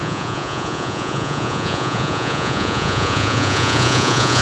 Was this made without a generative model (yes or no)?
no